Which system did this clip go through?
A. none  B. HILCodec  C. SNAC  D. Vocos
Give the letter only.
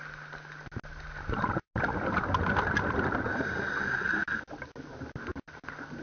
A